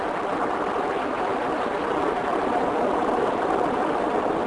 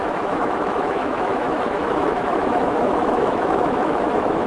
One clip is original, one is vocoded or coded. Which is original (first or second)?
first